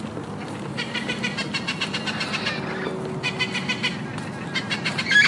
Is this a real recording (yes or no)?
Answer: yes